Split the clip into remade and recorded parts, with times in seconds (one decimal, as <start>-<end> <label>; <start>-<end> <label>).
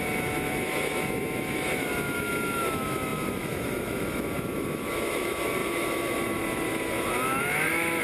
0.0-8.0 remade